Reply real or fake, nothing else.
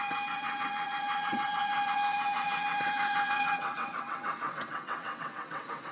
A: fake